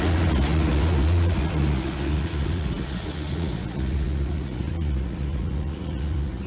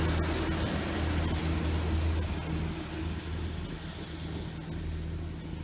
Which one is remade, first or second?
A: first